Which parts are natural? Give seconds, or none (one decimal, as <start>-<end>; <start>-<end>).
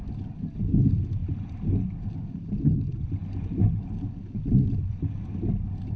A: 0.0-6.0